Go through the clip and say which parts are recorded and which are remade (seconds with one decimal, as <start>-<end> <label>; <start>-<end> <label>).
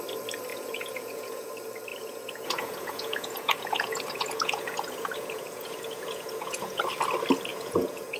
0.0-0.5 recorded; 0.5-1.5 remade; 1.5-1.9 recorded; 1.9-6.8 remade; 6.8-7.5 recorded; 7.5-8.2 remade